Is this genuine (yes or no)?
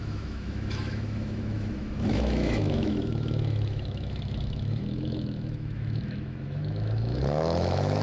no